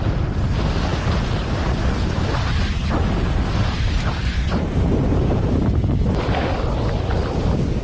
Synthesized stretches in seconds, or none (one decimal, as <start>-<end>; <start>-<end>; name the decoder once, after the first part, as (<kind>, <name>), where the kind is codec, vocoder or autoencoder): 3.6-6.5 (vocoder, BigVGAN v2)